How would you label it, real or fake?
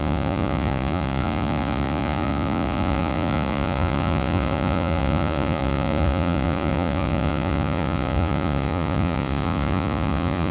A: fake